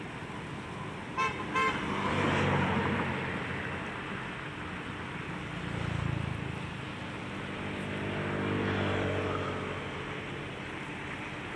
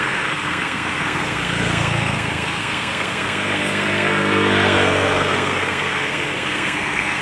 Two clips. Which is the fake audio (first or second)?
second